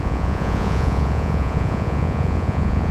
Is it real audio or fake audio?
fake